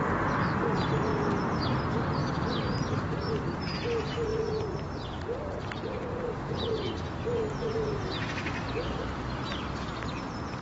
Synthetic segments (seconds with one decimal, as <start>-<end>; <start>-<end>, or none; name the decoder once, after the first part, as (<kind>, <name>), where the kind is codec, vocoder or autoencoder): 0.0-1.1 (vocoder, BigVGAN v2); 1.8-10.6